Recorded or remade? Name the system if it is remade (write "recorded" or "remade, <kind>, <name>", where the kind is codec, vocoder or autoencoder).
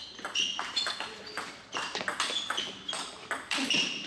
recorded